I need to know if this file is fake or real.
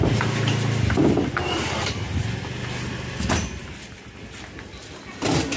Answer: real